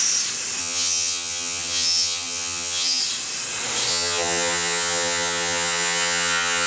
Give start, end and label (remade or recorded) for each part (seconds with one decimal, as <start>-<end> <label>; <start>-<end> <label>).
0.0-0.6 recorded; 0.6-3.0 remade; 3.0-3.9 recorded; 3.9-6.7 remade